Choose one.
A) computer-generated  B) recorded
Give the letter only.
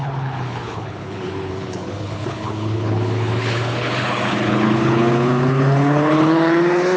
A